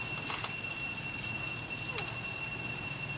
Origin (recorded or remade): recorded